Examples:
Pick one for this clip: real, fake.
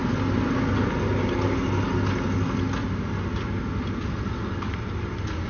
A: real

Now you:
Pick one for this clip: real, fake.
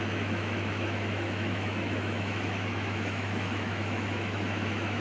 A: fake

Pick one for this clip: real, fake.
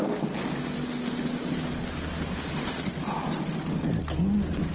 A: real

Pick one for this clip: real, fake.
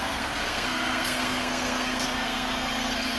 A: fake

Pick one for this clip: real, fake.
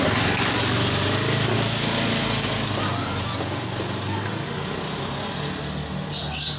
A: real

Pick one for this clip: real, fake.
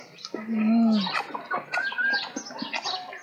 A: real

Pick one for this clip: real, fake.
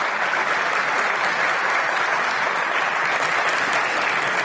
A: real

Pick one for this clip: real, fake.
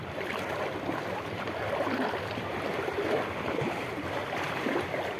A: fake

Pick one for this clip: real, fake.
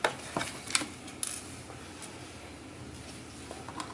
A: real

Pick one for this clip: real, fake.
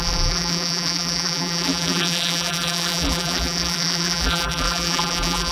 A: fake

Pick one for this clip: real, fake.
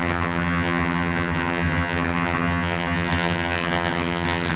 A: fake